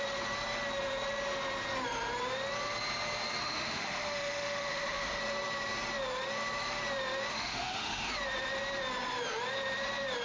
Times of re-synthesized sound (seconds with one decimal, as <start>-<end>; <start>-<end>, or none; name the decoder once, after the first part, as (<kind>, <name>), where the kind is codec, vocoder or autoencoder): 3.4-5.2 (autoencoder, DAC-VAE); 7.3-8.1

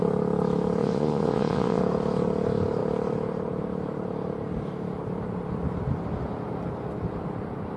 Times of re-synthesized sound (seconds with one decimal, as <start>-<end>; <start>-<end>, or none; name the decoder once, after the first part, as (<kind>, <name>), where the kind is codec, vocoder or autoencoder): 0.8-1.8 (vocoder, Vocos)

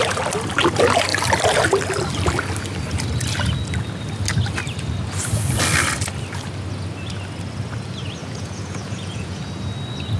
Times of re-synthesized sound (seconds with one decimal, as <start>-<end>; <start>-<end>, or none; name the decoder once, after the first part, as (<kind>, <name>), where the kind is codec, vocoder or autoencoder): 8.2-9.4 (vocoder, Vocos)

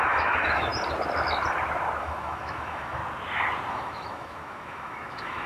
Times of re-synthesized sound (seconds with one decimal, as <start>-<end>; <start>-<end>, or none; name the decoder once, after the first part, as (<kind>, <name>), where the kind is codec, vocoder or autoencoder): 0.0-0.7 (autoencoder, DAC-VAE); 2.0-3.0; 3.7-5.5

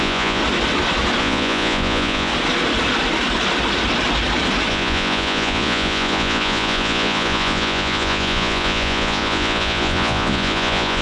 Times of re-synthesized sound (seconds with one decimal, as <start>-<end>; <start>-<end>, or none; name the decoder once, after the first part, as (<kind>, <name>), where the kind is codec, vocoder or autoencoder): 0.0-0.4 (vocoder, Vocos); 1.2-2.3; 4.7-11.0